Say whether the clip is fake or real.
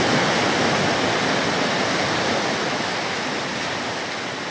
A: real